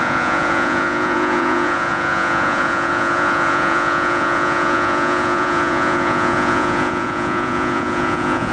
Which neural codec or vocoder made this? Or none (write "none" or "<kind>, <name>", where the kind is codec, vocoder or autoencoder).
vocoder, Vocos